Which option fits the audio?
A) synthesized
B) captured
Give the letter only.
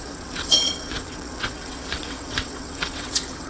A